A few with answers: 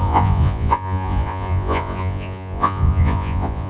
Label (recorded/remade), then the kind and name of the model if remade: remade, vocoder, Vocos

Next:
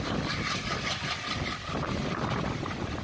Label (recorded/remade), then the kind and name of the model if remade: recorded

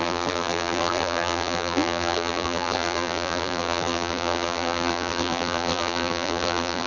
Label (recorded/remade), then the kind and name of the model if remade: remade, vocoder, BigVGAN v2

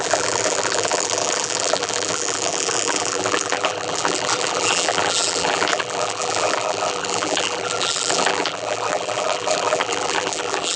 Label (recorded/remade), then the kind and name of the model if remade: remade, vocoder, BigVGAN v2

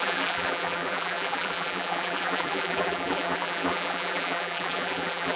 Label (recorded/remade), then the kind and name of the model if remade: remade, vocoder, BigVGAN v2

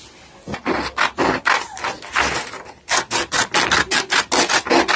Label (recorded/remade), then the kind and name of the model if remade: recorded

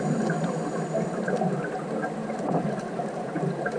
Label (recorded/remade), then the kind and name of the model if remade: recorded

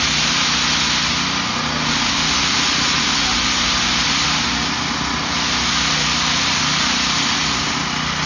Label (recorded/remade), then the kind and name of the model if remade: recorded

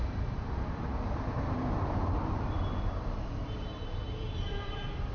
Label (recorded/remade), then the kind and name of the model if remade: remade, vocoder, BigVGAN v2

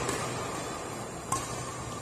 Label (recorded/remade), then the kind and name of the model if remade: recorded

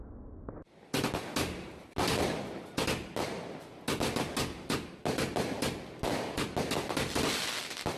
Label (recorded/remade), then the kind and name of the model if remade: recorded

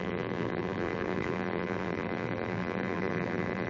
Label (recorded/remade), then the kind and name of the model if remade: remade, vocoder, BigVGAN v2